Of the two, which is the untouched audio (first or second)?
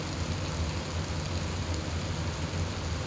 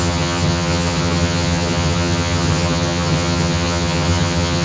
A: first